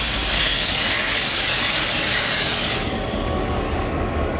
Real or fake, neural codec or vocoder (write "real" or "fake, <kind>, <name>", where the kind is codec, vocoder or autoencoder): fake, codec, DAC